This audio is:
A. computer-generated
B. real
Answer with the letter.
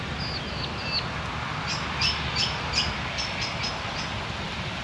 B